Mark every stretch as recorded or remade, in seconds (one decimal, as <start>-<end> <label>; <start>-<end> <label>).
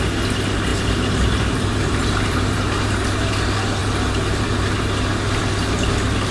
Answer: 0.0-0.7 recorded; 0.7-3.3 remade; 3.3-6.3 recorded